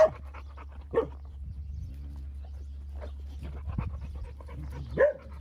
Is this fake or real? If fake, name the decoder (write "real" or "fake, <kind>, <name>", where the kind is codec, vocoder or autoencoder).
real